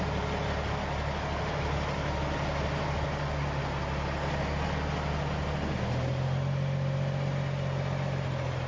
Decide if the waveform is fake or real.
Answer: real